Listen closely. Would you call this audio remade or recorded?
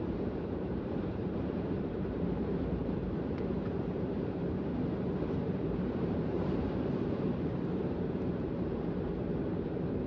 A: remade